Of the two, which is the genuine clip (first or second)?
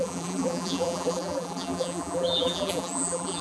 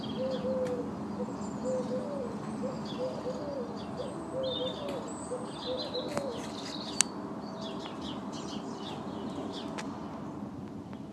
second